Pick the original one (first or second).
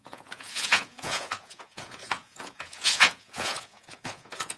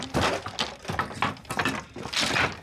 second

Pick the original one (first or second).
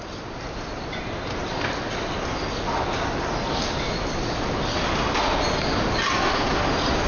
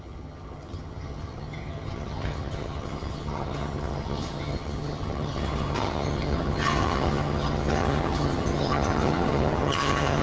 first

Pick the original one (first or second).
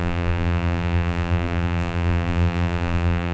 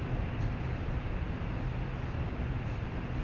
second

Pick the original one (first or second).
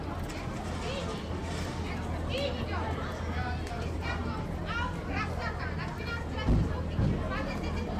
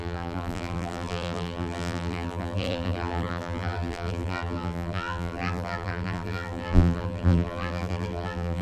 first